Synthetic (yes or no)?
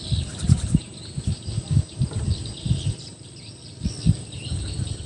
no